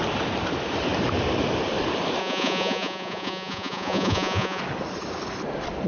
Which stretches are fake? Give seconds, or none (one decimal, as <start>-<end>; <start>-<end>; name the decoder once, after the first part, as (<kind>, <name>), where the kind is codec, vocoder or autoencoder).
2.2-4.6 (vocoder, Vocos)